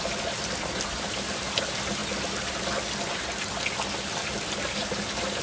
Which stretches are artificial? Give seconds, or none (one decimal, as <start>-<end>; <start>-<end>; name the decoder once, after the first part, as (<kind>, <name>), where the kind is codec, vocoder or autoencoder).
none